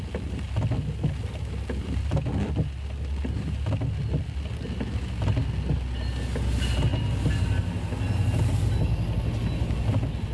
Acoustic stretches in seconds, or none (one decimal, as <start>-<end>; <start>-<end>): 0.0-10.3